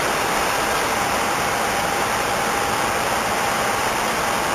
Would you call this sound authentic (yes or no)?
yes